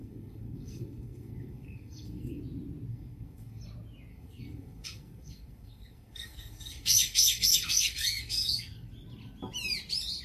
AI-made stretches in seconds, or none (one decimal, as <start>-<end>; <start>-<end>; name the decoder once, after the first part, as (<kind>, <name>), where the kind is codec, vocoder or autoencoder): 0.0-2.4 (codec, SNAC); 2.9-3.6; 4.1-8.9